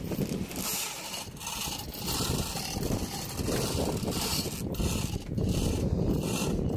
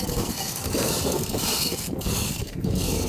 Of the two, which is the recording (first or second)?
first